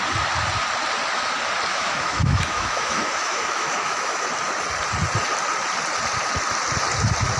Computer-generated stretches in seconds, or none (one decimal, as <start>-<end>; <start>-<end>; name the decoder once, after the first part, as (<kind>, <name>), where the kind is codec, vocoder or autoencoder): 1.7-4.3 (autoencoder, DAC-VAE)